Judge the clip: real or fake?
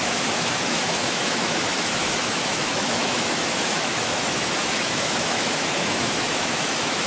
fake